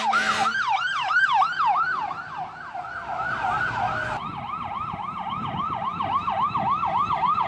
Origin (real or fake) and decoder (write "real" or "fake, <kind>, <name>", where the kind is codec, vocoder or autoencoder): real